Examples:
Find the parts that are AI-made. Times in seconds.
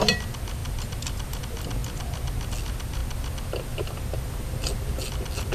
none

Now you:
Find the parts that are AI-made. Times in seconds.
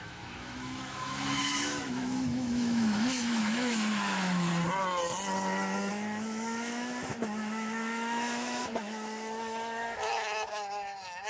0.0-4.5 (autoencoder, DAC-VAE); 5.9-11.3